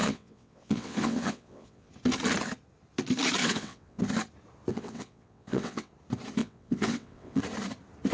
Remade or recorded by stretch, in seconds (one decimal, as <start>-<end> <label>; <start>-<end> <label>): 0.0-1.9 remade; 1.9-3.4 recorded; 3.4-4.0 remade; 4.0-4.7 recorded; 4.7-5.9 remade; 5.9-6.4 recorded; 6.4-7.4 remade; 7.4-8.1 recorded